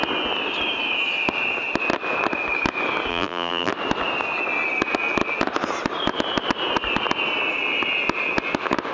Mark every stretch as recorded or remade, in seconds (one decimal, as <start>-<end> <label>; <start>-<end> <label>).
0.0-3.1 recorded; 3.1-3.7 remade; 3.7-8.9 recorded

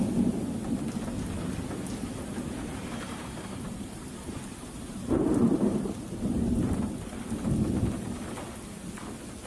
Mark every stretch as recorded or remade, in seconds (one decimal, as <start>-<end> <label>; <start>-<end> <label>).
0.0-2.3 recorded; 2.3-6.8 remade; 6.8-9.5 recorded

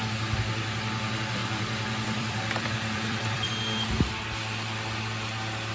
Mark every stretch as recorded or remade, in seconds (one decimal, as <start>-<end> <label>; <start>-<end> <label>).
0.0-1.4 recorded; 1.4-3.5 remade; 3.5-5.7 recorded

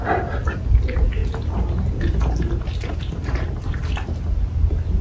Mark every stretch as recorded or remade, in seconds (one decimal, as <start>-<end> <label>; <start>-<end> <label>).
0.0-5.0 recorded

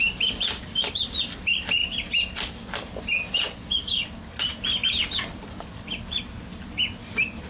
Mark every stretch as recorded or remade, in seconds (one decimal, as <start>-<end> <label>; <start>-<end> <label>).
0.0-1.8 remade; 1.8-5.2 recorded; 5.2-7.5 remade

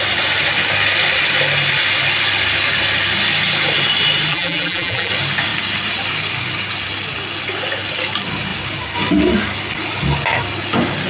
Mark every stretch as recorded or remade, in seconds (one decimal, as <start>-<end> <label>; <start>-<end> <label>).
0.0-4.3 recorded; 4.3-5.1 remade; 5.1-11.1 recorded